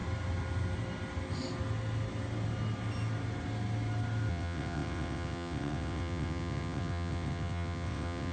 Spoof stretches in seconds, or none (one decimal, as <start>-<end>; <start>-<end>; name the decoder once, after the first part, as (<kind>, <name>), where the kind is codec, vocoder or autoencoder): 4.3-8.3 (vocoder, WaveNeXt)